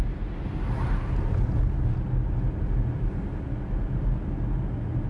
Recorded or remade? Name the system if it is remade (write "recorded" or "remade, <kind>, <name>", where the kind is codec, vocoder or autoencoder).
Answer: recorded